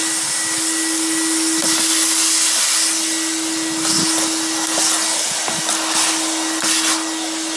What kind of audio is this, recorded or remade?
recorded